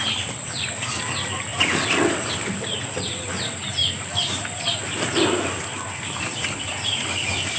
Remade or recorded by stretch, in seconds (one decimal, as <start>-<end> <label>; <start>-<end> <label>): 0.0-7.6 recorded